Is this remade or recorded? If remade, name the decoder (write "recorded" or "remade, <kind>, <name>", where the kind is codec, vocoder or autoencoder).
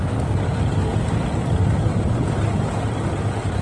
recorded